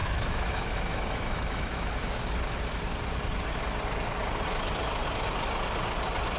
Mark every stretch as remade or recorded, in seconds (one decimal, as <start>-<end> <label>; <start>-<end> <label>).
0.0-2.0 remade; 2.0-6.4 recorded